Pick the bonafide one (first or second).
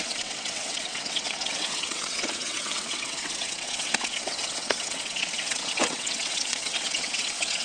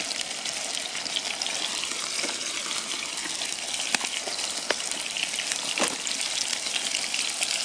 second